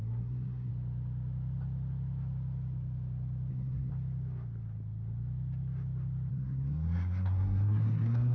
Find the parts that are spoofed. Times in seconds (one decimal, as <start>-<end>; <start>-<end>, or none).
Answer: 0.0-0.7; 3.5-3.9; 6.3-8.3